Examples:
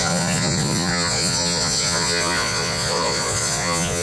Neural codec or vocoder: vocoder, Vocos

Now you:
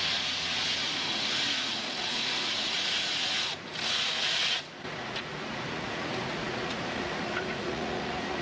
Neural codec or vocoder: vocoder, Vocos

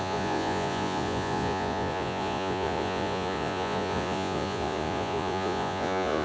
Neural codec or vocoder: vocoder, Vocos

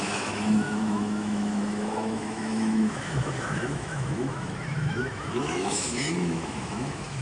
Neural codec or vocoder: autoencoder, DAC-VAE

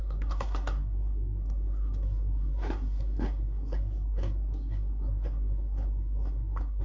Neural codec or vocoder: codec, SNAC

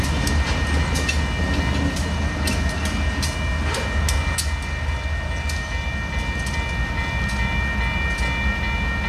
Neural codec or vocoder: none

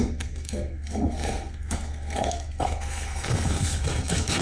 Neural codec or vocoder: codec, SNAC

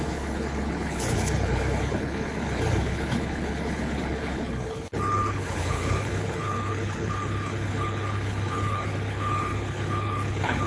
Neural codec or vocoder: codec, HILCodec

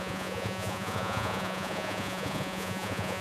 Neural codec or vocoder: vocoder, Vocos